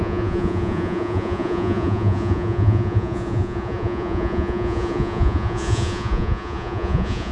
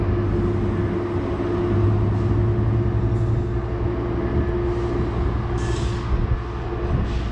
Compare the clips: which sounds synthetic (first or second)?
first